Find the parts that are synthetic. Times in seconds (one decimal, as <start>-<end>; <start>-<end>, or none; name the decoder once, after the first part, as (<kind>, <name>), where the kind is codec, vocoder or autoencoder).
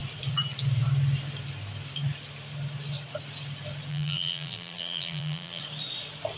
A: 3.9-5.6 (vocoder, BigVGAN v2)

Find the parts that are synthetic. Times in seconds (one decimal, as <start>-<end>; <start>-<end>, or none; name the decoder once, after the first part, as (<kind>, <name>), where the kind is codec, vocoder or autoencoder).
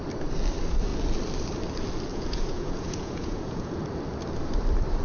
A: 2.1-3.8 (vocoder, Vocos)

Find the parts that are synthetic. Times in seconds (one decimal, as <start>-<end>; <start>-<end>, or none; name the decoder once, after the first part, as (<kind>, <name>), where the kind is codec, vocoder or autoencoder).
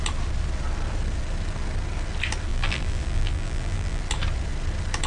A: 2.5-4.0 (vocoder, BigVGAN v2)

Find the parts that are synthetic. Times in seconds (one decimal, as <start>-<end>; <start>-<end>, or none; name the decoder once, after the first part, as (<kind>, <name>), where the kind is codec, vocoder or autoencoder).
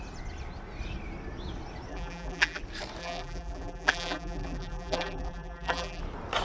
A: 1.9-2.6 (vocoder, BigVGAN v2); 3.0-6.0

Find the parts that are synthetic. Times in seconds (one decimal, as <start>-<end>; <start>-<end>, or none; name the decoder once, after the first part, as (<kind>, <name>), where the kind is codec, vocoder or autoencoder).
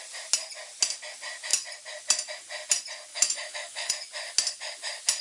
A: 3.1-3.9 (autoencoder, DAC-VAE)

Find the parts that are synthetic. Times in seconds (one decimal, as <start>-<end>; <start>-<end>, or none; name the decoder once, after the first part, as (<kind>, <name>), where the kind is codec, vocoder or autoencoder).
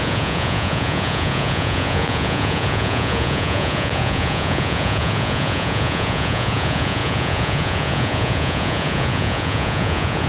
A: 0.0-10.3 (vocoder, Vocos)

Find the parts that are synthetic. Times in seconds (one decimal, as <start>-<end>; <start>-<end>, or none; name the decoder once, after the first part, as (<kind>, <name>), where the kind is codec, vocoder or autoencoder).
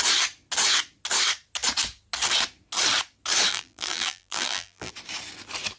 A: 3.5-4.9 (vocoder, BigVGAN v2)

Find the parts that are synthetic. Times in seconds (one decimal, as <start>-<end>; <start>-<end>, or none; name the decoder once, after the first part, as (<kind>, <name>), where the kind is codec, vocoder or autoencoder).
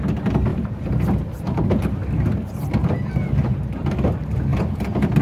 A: 0.5-3.6 (vocoder, BigVGAN v2)